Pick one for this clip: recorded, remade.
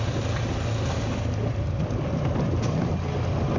recorded